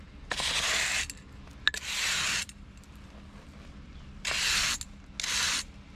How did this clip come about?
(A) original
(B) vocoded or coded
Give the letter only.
A